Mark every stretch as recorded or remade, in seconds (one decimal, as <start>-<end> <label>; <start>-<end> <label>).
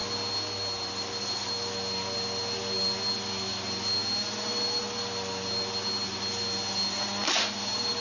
0.0-8.0 recorded